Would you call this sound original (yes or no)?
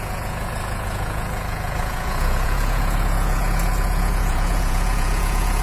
no